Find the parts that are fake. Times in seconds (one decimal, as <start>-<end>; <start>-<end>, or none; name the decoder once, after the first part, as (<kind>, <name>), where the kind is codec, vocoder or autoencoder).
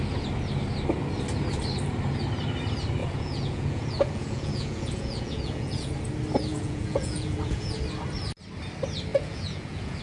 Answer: 3.0-5.9 (vocoder, Vocos); 6.5-7.7; 9.1-10.0